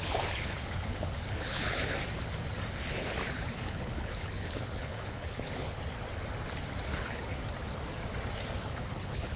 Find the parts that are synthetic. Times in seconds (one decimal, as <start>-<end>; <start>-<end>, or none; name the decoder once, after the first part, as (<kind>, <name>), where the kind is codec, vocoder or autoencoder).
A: 0.0-2.0 (codec, HILCodec); 2.9-5.8; 6.9-7.4; 8.6-9.4